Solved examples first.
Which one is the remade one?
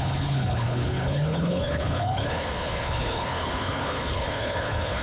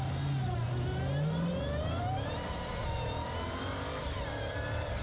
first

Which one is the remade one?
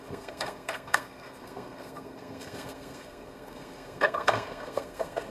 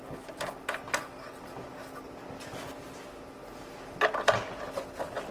first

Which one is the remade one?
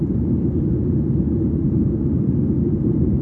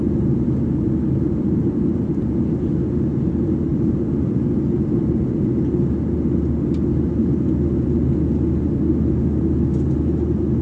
first